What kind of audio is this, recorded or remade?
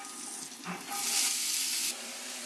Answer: recorded